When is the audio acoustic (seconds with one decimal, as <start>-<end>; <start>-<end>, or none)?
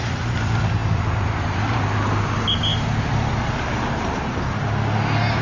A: 0.0-5.4